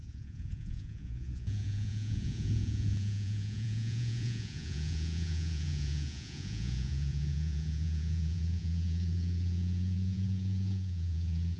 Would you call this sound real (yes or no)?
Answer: no